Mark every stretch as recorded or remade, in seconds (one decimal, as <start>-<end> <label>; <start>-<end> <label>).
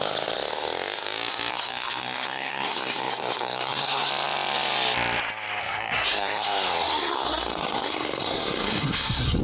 0.0-1.5 recorded; 1.5-4.1 remade; 4.1-5.6 recorded; 5.6-9.4 remade